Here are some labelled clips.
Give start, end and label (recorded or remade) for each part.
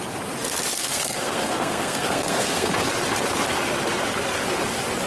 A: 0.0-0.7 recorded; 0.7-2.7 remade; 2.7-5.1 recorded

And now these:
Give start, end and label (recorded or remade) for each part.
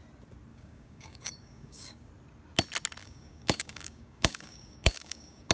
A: 0.0-0.5 recorded; 0.5-2.1 remade; 2.1-3.0 recorded; 3.0-5.5 remade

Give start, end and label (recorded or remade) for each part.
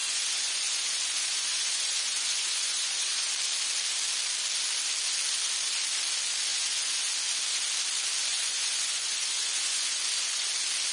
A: 0.0-3.3 remade; 3.3-6.5 recorded; 6.5-7.1 remade; 7.1-8.3 recorded; 8.3-10.4 remade; 10.4-10.9 recorded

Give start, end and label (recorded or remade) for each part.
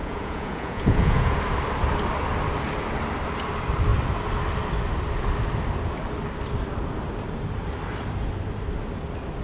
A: 0.0-1.4 remade; 1.4-9.4 recorded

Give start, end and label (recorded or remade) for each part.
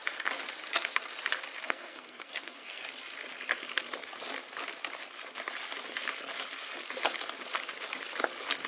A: 0.0-1.6 recorded; 1.6-2.8 remade; 2.8-8.7 recorded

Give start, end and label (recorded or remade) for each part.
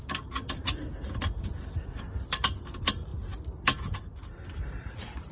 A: 0.0-5.3 recorded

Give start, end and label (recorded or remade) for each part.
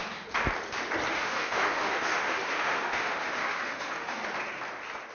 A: 0.0-1.1 recorded; 1.1-4.2 remade; 4.2-5.1 recorded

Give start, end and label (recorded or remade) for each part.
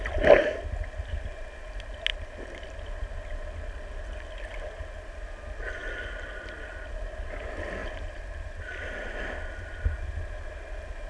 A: 0.0-7.8 recorded; 7.8-8.5 remade; 8.5-11.1 recorded